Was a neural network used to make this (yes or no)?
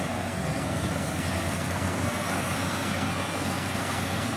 yes